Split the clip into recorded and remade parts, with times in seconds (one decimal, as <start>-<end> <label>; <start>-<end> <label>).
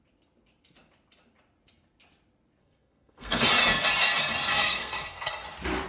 0.0-2.6 recorded; 2.6-3.4 remade; 3.4-4.5 recorded; 4.5-5.3 remade; 5.3-5.9 recorded